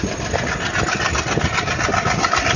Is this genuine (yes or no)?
yes